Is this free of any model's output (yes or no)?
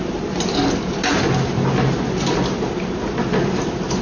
yes